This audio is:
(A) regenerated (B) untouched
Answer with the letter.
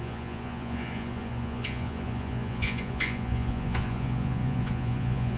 A